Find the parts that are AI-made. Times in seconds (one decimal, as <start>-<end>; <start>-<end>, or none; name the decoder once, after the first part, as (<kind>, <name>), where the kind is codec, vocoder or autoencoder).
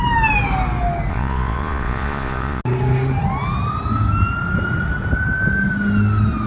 1.1-2.6 (vocoder, Vocos)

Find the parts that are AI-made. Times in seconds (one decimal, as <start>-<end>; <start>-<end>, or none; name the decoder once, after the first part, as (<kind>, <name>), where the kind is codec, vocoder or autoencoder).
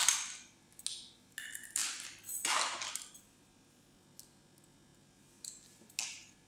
none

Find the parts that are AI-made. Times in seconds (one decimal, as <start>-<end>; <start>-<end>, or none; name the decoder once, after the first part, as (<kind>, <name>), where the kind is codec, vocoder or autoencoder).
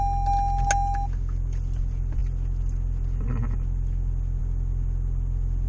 none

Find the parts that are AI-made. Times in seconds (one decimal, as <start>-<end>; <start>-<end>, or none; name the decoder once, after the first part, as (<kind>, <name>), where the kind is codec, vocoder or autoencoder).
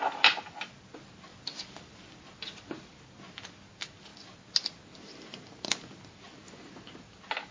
none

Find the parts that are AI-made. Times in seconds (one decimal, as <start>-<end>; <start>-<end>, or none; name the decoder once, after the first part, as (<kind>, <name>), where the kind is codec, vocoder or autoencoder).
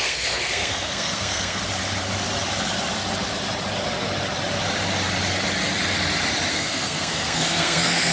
0.0-1.6 (codec, SNAC); 6.5-8.1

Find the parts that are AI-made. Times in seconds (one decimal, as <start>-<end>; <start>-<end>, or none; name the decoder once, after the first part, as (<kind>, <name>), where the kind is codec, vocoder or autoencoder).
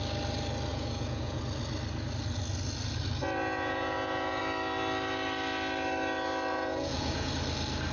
0.7-1.4 (vocoder, Vocos); 3.4-4.4; 6.5-7.3